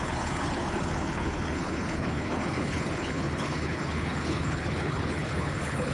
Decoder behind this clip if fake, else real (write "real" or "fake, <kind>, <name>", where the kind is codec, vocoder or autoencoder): fake, codec, HILCodec